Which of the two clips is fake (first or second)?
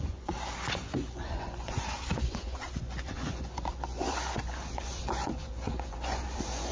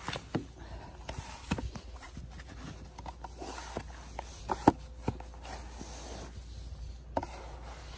first